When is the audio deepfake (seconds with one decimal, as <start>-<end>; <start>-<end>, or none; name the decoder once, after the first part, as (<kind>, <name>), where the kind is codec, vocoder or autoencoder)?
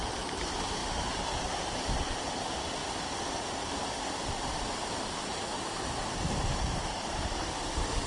0.0-2.8 (vocoder, BigVGAN v2); 6.0-8.1